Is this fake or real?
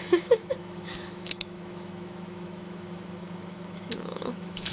fake